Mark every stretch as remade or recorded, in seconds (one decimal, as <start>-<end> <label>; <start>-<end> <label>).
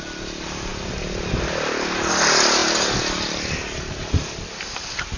0.0-5.2 recorded